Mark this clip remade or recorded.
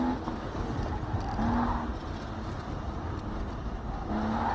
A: recorded